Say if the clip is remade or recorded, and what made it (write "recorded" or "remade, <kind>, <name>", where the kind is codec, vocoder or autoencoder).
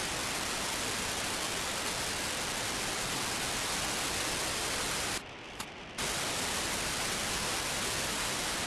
recorded